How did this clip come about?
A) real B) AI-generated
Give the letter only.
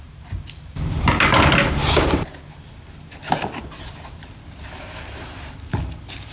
B